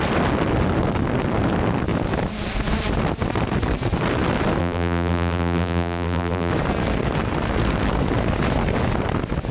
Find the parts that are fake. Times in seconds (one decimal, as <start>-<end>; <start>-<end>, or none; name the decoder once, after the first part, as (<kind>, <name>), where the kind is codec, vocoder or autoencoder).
4.6-6.5 (vocoder, BigVGAN v2)